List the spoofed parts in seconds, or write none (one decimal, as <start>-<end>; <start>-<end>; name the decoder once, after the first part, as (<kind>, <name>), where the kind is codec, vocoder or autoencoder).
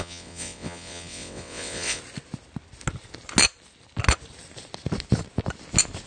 0.0-2.0 (vocoder, WaveNeXt)